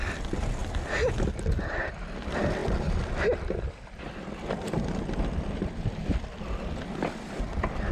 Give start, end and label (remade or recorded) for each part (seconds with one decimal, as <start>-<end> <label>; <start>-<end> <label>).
0.0-7.9 recorded